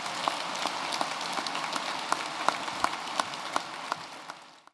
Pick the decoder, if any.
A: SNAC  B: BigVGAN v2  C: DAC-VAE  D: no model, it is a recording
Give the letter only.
D